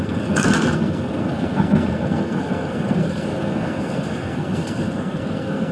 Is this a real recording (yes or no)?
no